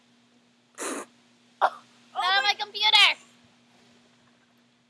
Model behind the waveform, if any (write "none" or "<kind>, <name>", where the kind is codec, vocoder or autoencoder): none